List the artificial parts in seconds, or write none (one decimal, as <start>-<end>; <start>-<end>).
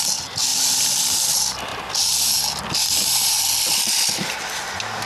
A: none